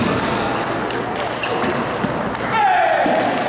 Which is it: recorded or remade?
recorded